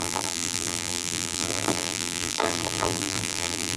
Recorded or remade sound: remade